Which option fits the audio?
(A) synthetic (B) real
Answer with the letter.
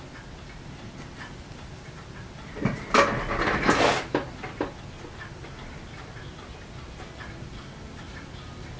B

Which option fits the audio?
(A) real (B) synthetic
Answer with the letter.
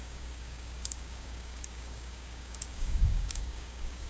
B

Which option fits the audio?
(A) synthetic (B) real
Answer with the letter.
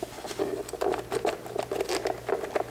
B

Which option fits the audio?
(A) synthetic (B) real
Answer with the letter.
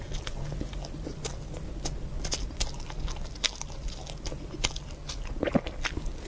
B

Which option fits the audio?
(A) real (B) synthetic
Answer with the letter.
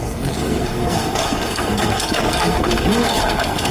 B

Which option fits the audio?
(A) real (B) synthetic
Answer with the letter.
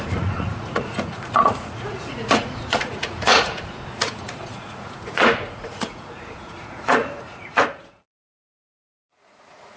B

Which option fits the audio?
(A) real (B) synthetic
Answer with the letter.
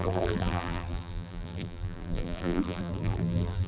B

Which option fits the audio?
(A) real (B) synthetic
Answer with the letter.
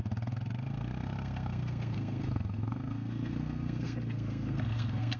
B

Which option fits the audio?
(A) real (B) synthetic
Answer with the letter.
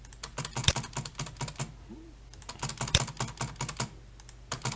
A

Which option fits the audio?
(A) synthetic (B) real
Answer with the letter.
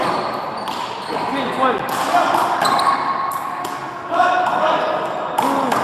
B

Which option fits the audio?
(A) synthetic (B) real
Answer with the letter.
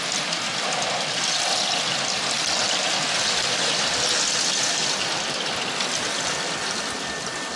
B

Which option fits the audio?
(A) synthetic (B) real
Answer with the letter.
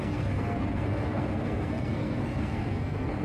A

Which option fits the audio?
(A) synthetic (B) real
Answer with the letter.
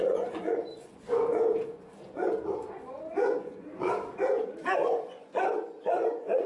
A